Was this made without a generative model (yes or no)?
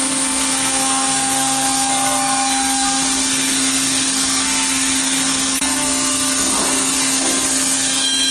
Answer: no